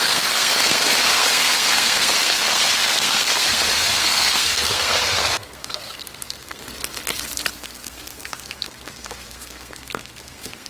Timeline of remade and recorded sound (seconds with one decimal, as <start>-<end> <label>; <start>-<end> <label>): 0.0-6.6 remade; 6.6-7.5 recorded; 7.5-10.7 remade